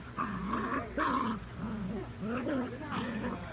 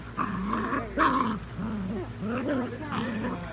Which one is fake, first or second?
first